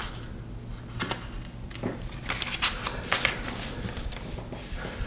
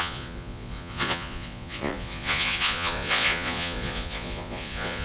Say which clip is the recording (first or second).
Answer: first